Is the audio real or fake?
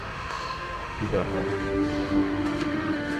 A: fake